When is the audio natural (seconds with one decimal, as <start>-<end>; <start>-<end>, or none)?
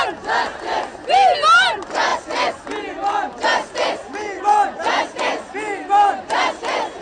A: 0.0-7.0